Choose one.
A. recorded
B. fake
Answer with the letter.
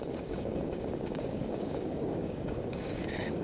B